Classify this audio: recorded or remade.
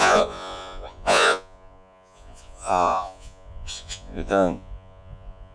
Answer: remade